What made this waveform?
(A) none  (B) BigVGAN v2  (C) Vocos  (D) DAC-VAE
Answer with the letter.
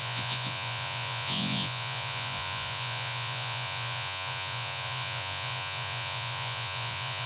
C